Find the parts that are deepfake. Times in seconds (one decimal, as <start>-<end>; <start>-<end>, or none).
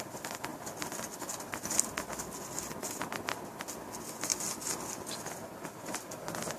none